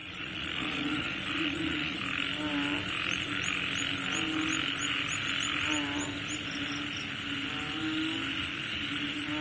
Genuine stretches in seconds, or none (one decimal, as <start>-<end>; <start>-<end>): 2.0-9.4

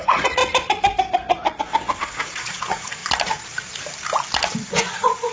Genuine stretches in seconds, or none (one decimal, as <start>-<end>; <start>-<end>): 0.4-2.0; 3.0-4.7

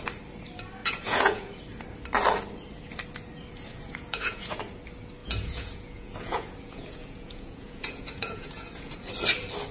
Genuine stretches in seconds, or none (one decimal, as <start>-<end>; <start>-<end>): 0.0-0.8; 1.6-3.7; 4.6-5.2; 9.1-9.7

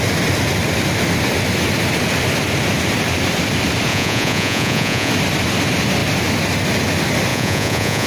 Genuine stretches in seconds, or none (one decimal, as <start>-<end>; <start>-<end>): 0.0-3.9; 5.1-7.3

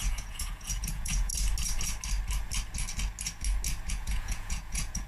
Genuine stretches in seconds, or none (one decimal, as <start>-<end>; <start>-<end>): 1.3-3.9

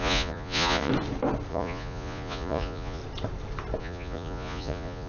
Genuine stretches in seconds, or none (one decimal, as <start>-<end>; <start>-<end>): 0.9-1.5; 3.0-3.8

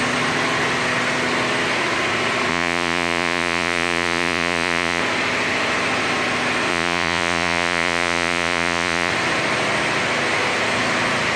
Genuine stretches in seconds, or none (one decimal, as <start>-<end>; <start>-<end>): 0.0-2.5; 5.0-6.7; 9.1-11.4